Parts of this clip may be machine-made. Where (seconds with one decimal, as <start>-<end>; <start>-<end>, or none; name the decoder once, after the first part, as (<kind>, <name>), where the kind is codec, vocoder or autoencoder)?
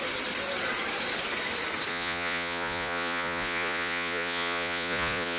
1.9-5.4 (vocoder, Vocos)